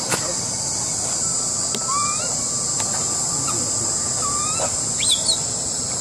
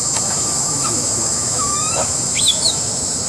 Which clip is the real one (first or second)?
first